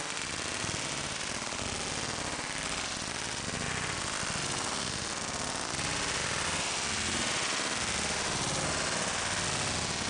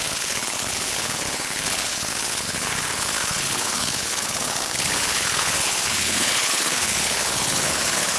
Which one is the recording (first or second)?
first